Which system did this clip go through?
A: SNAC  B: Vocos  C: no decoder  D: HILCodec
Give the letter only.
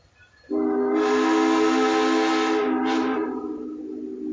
C